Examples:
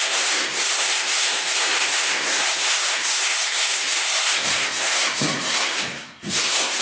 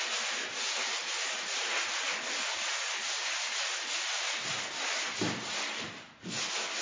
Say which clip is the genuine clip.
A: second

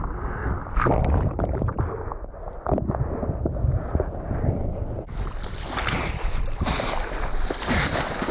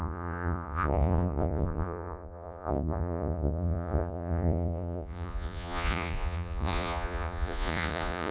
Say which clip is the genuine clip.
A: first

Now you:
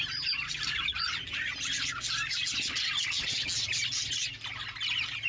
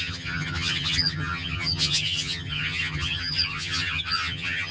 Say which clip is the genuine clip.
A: first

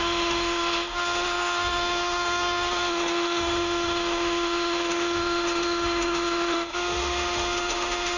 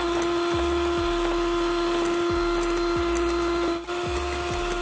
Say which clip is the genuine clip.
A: second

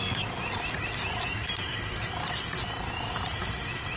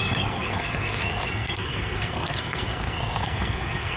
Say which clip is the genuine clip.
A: first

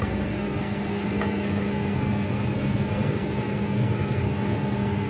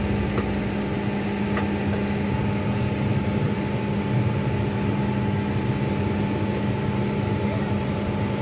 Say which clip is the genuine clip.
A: second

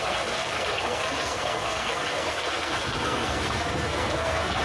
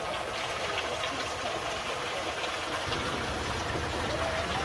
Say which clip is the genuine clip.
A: second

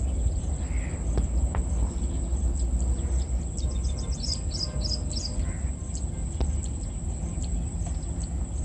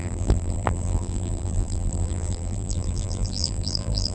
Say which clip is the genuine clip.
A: first